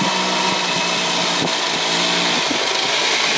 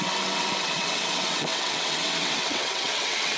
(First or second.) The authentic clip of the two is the first